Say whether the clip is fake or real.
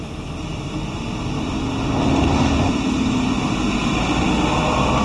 real